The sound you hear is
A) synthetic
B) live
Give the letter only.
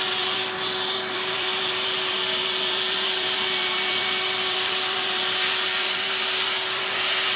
A